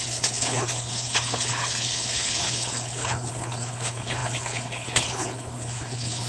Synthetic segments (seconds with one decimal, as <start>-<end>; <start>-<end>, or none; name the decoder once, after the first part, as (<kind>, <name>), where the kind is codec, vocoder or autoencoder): 0.0-6.3 (codec, HILCodec)